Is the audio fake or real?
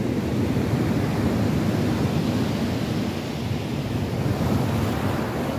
real